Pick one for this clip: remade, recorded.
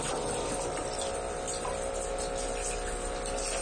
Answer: recorded